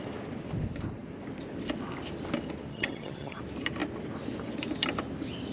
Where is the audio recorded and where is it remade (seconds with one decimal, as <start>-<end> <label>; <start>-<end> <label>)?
0.0-2.7 recorded; 2.7-3.4 remade; 3.4-5.5 recorded